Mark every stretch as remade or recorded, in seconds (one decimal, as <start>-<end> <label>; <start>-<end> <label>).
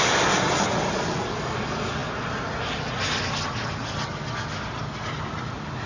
0.0-5.9 recorded